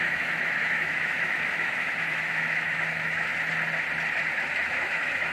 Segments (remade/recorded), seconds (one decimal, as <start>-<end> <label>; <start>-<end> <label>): 0.0-3.3 remade; 3.3-4.7 recorded; 4.7-5.3 remade